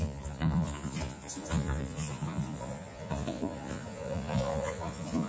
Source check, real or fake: fake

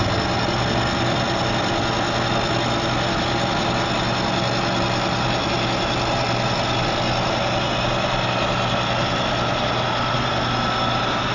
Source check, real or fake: real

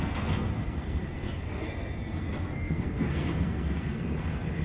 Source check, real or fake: fake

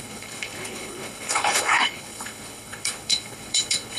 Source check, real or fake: fake